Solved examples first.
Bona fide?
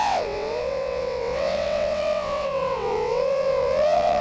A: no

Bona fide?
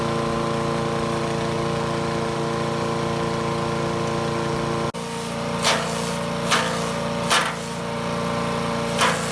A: yes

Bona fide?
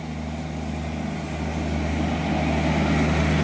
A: yes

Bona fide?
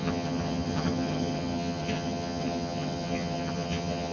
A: no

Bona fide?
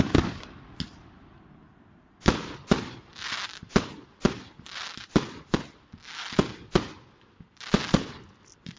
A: yes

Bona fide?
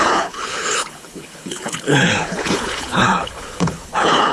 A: no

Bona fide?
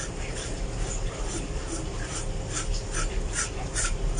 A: yes